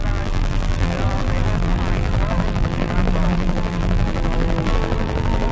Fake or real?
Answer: fake